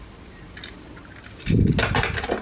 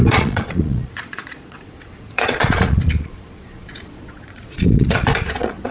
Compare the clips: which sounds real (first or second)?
first